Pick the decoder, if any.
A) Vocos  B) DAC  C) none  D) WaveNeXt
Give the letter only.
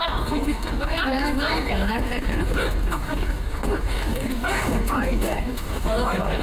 B